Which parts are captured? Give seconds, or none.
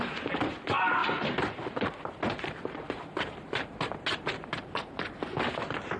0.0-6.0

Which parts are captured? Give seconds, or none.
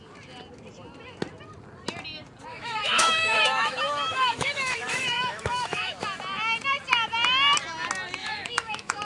0.0-2.5; 5.9-8.2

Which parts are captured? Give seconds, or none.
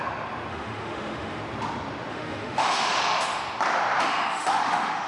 0.0-0.5; 1.4-2.1; 3.4-4.0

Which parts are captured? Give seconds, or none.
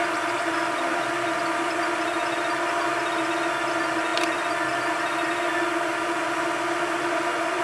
0.0-7.6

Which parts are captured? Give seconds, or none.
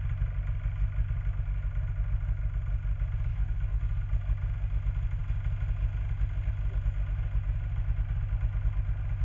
0.0-3.3; 3.8-9.2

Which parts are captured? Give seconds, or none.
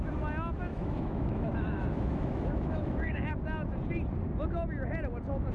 0.0-0.7; 3.3-5.5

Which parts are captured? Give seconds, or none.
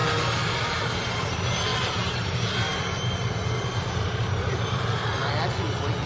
5.2-6.1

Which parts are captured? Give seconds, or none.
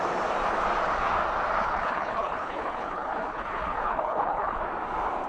0.0-1.6; 4.6-5.3